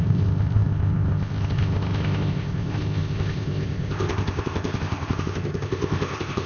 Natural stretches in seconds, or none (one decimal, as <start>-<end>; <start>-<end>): none